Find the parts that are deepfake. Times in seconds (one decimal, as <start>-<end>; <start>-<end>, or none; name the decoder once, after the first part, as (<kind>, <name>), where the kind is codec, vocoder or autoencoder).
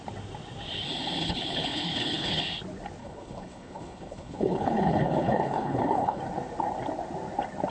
1.2-2.4 (codec, HILCodec); 3.0-6.2